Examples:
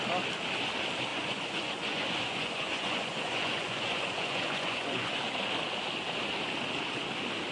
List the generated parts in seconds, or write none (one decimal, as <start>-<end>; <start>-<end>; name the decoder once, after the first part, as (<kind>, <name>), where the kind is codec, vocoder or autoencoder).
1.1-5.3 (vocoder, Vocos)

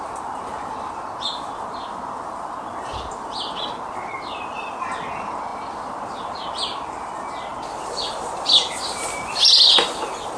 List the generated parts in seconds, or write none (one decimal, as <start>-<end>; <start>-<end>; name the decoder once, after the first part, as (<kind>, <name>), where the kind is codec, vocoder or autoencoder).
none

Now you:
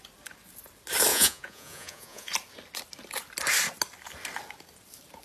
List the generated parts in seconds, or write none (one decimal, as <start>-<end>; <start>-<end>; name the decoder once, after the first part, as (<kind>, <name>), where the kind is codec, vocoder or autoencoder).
1.1-2.3 (vocoder, Vocos)

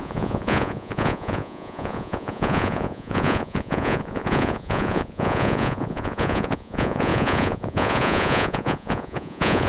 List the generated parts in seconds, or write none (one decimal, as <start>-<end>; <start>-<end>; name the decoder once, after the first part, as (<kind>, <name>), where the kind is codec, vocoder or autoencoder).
0.0-9.7 (vocoder, Vocos)